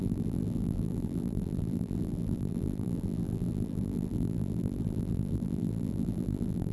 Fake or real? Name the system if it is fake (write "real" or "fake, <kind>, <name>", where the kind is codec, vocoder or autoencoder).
fake, vocoder, BigVGAN v2